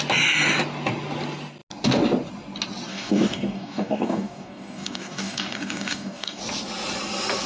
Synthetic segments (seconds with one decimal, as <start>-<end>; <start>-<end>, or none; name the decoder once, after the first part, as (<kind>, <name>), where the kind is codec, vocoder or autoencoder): 2.9-6.4 (codec, DAC)